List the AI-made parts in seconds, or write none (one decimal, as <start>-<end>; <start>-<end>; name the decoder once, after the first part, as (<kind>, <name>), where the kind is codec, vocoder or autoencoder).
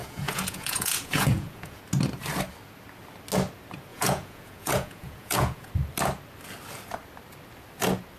0.0-1.8 (vocoder, Vocos); 3.9-5.7